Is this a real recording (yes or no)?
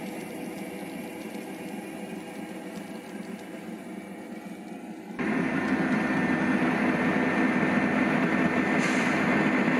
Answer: yes